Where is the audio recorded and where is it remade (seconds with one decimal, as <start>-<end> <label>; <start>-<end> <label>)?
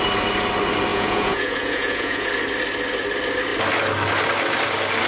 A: 0.0-0.9 recorded; 0.9-2.3 remade; 2.3-5.1 recorded